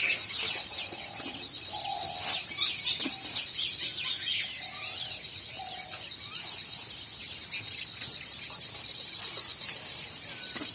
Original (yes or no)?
yes